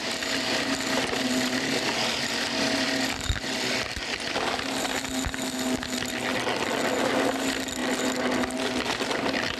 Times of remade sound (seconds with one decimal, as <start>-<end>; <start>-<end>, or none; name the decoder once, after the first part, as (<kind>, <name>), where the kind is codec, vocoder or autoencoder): none